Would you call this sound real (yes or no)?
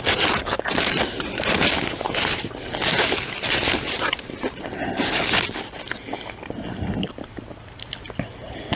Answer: yes